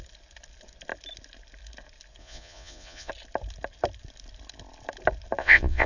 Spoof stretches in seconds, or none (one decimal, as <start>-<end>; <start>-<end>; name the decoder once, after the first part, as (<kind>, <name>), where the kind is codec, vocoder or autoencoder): 2.2-3.1 (vocoder, Vocos); 5.4-5.9